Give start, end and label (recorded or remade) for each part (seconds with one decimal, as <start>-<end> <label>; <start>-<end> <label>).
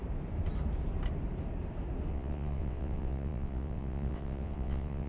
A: 0.0-2.1 recorded; 2.1-5.1 remade